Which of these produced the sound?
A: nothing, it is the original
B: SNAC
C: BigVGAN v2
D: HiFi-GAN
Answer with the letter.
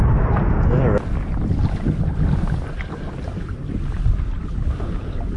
A